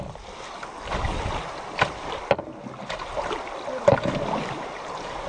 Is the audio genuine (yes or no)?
yes